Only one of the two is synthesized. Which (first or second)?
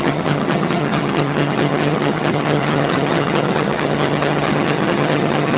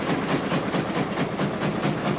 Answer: first